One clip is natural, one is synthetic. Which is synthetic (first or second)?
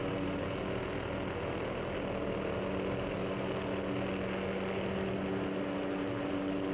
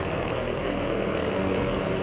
second